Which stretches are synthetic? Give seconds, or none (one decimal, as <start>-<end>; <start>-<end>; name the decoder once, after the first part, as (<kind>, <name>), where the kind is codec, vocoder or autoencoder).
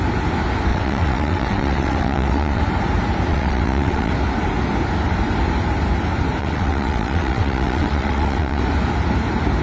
0.7-2.6 (vocoder, WaveNeXt); 3.3-4.1; 6.4-8.6